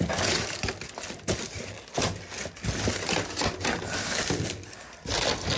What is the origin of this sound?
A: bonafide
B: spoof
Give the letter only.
A